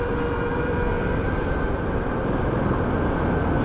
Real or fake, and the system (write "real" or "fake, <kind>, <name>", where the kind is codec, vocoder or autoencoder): real